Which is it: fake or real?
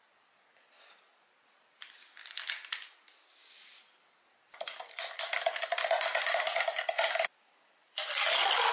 real